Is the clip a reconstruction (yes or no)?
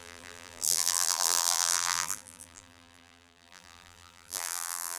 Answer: yes